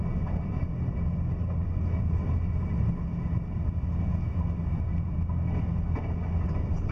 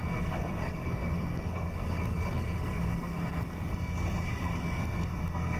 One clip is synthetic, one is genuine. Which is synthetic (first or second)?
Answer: second